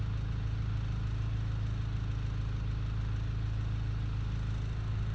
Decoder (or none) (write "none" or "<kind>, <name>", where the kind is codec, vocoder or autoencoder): none